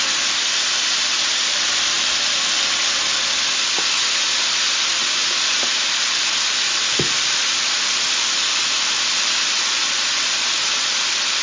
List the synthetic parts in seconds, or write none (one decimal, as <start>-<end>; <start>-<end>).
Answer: none